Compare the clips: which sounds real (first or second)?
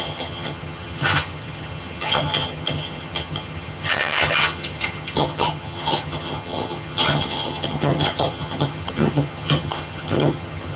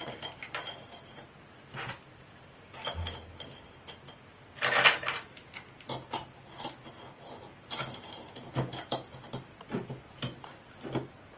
second